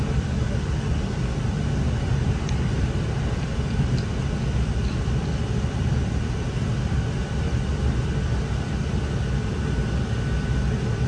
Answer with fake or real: real